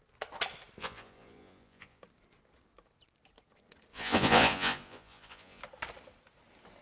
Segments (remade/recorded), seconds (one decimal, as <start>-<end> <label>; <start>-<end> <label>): 0.0-0.8 recorded; 0.8-2.0 remade; 2.0-3.9 recorded; 3.9-5.6 remade; 5.6-6.8 recorded